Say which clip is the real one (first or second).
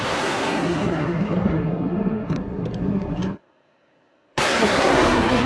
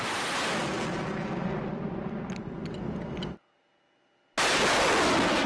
second